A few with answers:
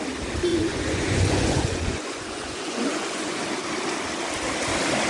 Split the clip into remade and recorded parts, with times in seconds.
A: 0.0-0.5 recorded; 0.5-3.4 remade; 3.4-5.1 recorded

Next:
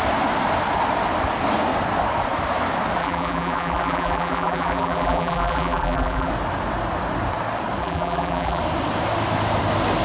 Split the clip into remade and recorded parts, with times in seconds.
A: 0.0-3.0 recorded; 3.0-6.3 remade; 6.3-7.8 recorded; 7.8-8.6 remade; 8.6-10.0 recorded

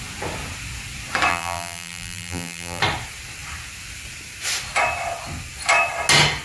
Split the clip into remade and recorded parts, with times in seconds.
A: 0.0-1.3 recorded; 1.3-2.8 remade; 2.8-6.4 recorded